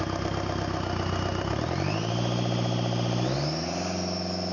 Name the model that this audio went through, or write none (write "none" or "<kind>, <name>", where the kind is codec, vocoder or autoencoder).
none